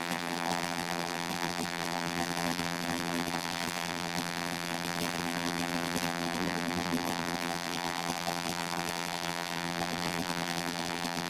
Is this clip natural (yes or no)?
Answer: no